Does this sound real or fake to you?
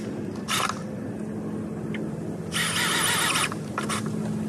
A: real